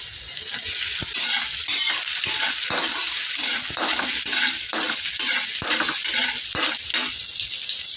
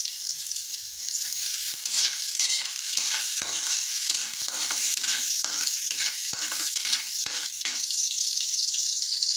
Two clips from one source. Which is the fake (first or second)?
second